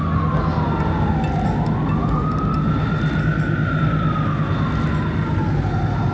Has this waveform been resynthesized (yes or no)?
no